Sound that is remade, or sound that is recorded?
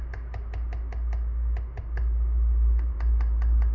recorded